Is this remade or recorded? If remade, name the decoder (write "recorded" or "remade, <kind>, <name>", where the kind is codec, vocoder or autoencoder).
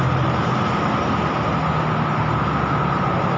recorded